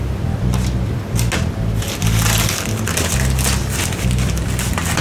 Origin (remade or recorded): recorded